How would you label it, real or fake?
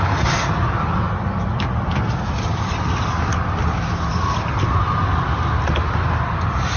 real